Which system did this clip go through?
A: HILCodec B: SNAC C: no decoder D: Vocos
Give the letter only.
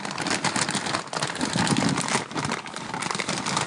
C